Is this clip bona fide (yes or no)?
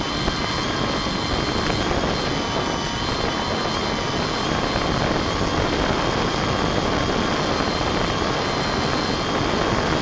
yes